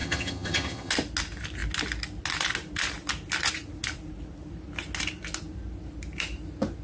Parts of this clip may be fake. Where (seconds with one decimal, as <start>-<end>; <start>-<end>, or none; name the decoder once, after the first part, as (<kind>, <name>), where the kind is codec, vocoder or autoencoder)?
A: 0.0-0.9 (vocoder, HiFi-GAN)